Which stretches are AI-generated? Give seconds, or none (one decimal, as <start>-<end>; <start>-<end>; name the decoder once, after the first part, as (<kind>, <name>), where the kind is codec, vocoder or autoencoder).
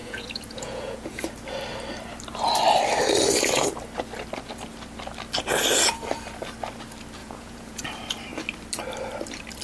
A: 0.0-1.2 (vocoder, Vocos); 7.2-7.8